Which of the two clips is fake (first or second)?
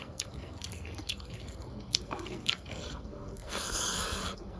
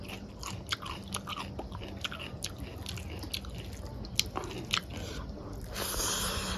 first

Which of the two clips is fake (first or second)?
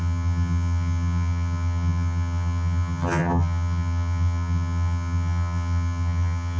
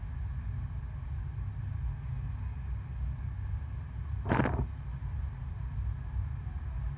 first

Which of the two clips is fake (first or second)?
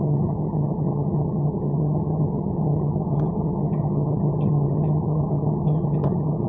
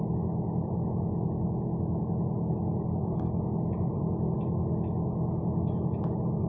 first